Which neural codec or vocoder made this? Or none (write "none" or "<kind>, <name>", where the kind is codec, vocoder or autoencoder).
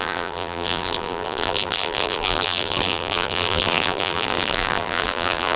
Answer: vocoder, BigVGAN v2